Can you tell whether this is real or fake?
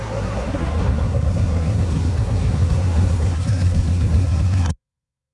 fake